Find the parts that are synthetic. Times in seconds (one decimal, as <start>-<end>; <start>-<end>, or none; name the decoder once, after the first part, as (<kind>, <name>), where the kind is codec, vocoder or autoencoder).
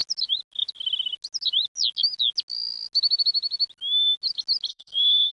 4.7-5.3 (codec, SNAC)